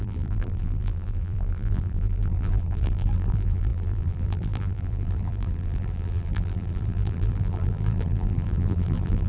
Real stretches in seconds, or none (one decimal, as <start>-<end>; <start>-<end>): none